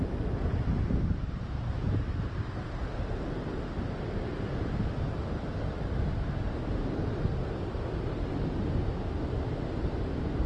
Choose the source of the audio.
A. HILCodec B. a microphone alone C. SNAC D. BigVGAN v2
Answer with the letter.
B